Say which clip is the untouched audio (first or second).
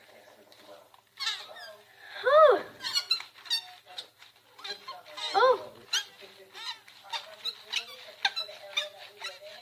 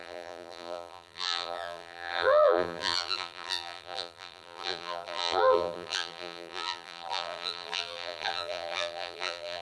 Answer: first